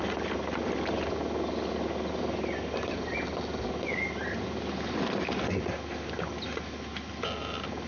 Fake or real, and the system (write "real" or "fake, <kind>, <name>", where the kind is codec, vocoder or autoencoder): real